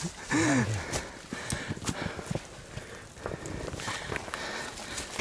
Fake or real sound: real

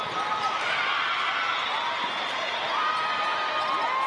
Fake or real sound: real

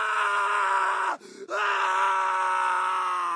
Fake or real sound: real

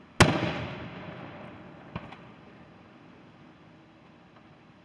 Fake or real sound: real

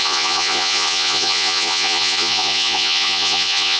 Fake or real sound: fake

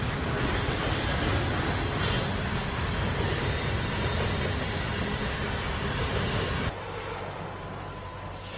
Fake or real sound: real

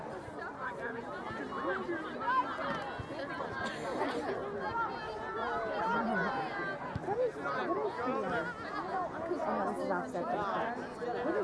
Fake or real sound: real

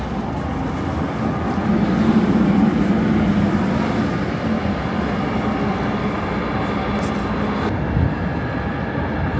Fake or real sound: real